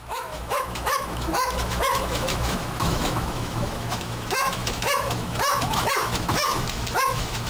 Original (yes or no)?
no